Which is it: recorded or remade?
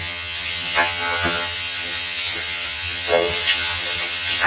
remade